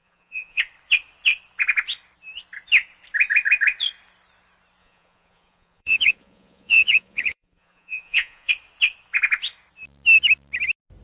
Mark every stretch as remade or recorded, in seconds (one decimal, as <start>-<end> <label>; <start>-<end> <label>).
0.0-0.6 remade; 0.6-4.8 recorded; 4.8-8.5 remade; 8.5-11.0 recorded